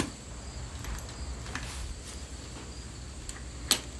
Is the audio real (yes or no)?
yes